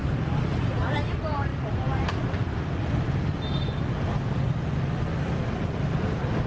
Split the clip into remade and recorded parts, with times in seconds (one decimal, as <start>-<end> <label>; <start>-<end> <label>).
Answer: 0.0-6.5 recorded